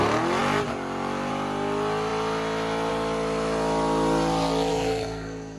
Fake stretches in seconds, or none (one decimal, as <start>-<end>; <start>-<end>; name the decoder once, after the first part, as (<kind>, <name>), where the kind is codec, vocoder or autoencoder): 4.7-5.6 (codec, SNAC)